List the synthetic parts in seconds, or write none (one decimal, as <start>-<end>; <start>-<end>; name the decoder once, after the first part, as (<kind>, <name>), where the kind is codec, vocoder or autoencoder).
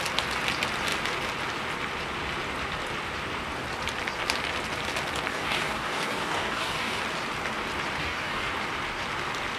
5.3-7.0 (codec, DAC); 8.0-8.5